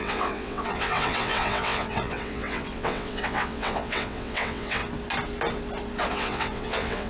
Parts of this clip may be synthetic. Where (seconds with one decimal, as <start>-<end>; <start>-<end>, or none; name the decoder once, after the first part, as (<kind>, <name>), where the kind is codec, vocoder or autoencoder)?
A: 0.0-4.8 (vocoder, WaveNeXt); 6.1-7.1